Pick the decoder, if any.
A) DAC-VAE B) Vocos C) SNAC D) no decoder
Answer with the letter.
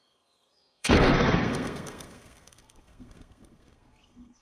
C